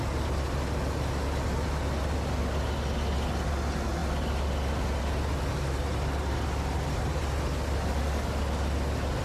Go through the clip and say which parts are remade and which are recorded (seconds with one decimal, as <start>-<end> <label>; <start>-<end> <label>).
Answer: 0.0-9.2 recorded